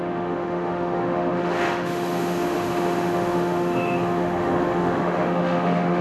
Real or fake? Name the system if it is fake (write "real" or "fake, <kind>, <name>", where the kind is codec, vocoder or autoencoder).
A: fake, autoencoder, DAC-VAE